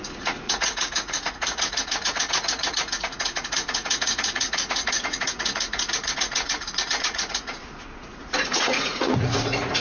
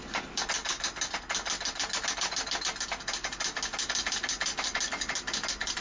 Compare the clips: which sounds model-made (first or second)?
first